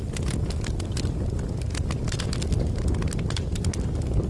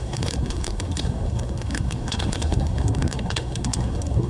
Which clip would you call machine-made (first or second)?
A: second